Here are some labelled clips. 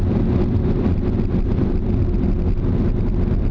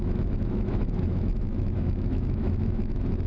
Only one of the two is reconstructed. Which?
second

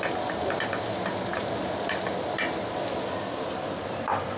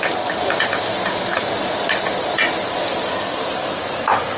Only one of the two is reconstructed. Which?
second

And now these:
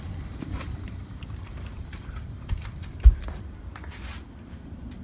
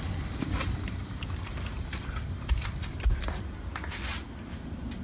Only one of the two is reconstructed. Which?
first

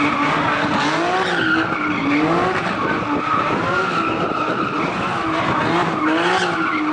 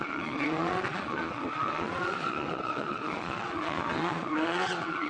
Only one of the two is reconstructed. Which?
second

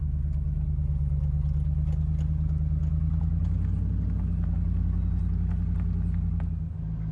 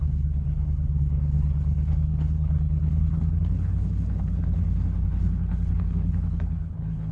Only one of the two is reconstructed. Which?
second